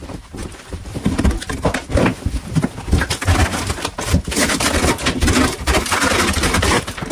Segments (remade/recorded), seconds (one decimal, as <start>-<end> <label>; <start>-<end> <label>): 0.0-1.8 remade; 1.8-5.1 recorded; 5.1-7.1 remade